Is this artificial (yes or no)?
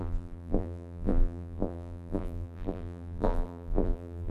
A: yes